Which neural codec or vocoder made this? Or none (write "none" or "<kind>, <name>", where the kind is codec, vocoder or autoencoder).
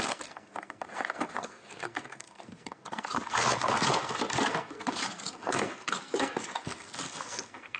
codec, SNAC